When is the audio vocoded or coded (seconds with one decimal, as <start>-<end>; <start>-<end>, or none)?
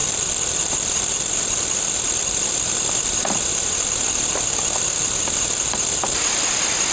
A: 0.0-2.4